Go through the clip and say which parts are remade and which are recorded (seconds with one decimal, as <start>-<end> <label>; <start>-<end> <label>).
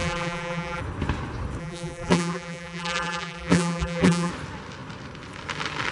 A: 0.0-0.8 remade; 0.8-1.6 recorded; 1.6-4.3 remade; 4.3-5.9 recorded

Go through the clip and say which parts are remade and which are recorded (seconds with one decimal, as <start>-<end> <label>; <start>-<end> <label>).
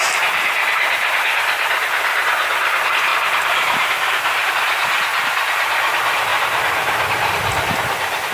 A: 0.0-3.1 recorded; 3.1-4.5 remade; 4.5-6.3 recorded; 6.3-7.8 remade; 7.8-8.3 recorded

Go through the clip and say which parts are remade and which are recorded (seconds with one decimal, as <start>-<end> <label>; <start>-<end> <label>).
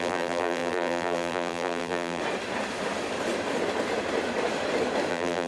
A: 0.0-2.2 remade; 2.2-5.1 recorded; 5.1-5.5 remade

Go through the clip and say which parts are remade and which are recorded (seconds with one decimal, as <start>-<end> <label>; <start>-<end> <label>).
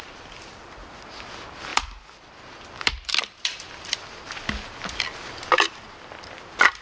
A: 0.0-1.7 recorded; 1.7-4.0 remade; 4.0-6.8 recorded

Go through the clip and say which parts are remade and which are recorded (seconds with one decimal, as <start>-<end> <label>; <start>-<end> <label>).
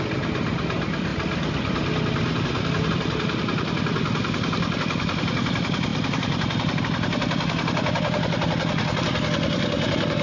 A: 0.0-10.2 recorded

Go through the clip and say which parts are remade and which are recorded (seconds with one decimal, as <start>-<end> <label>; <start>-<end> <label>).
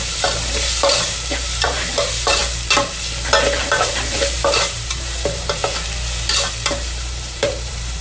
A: 0.0-2.4 remade; 2.4-3.6 recorded; 3.6-5.6 remade; 5.6-6.7 recorded; 6.7-8.0 remade